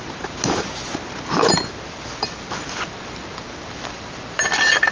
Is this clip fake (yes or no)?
no